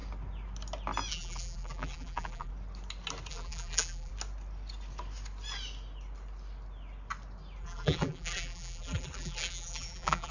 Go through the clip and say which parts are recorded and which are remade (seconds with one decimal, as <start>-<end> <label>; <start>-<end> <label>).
0.0-1.1 recorded; 1.1-2.5 remade; 2.5-3.3 recorded; 3.3-4.1 remade; 4.1-7.6 recorded; 7.6-10.3 remade